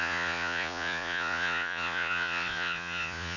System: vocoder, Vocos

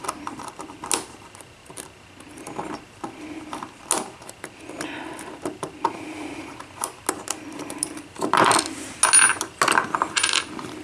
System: none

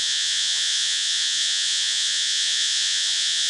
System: vocoder, Vocos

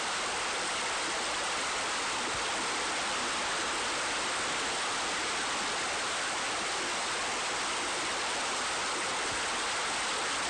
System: none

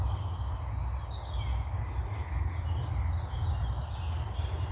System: none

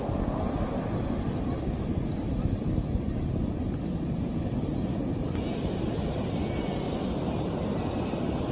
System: none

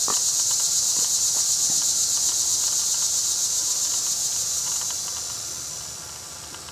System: none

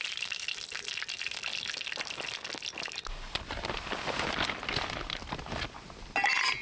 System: none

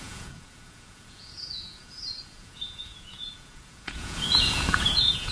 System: vocoder, Vocos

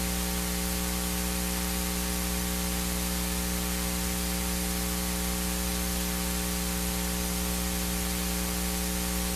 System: none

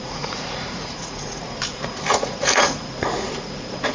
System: vocoder, Vocos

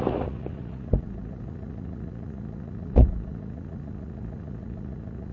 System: vocoder, Vocos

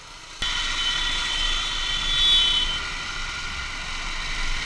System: none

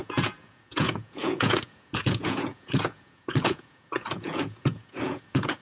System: vocoder, Vocos